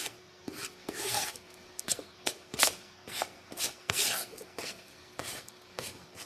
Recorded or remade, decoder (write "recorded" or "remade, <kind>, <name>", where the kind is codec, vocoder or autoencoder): remade, codec, SNAC